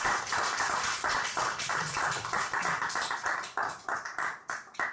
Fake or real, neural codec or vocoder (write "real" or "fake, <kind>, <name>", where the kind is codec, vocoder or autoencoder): real